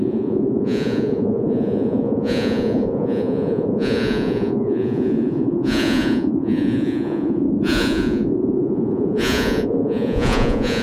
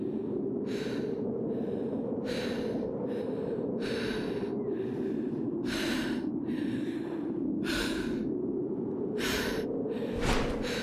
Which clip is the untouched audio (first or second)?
second